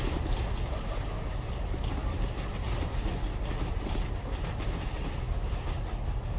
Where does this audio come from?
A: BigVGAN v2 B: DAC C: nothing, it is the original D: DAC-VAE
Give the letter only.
C